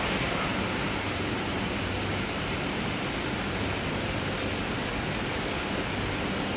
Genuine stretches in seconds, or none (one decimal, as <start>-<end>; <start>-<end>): 0.0-0.5; 4.5-6.6